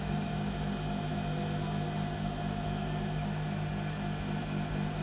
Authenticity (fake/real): real